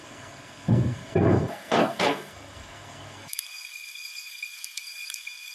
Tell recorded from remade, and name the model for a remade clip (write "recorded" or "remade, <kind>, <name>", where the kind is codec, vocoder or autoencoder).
remade, codec, SNAC